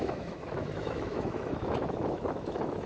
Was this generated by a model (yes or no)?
yes